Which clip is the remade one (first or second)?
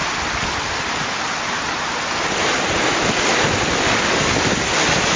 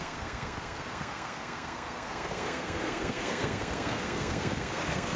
second